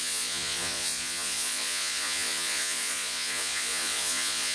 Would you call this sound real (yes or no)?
no